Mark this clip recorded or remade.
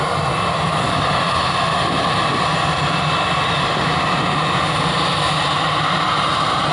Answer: recorded